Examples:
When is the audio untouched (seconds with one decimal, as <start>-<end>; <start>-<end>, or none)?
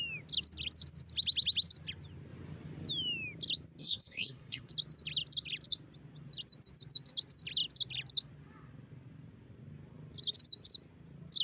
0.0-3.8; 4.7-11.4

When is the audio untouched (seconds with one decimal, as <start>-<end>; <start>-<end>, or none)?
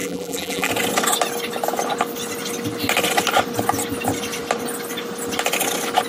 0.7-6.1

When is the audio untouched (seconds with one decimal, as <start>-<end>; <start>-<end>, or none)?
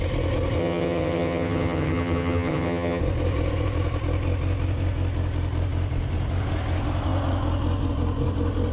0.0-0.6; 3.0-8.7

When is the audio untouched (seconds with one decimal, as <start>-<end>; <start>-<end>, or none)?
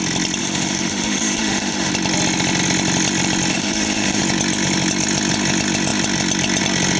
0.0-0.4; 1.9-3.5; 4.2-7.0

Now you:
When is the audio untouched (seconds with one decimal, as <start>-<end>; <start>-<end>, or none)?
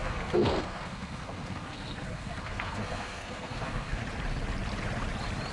4.0-5.5